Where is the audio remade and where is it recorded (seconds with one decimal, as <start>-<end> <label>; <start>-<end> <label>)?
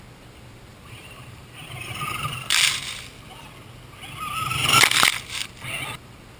0.0-0.7 recorded; 0.7-2.7 remade; 2.7-6.4 recorded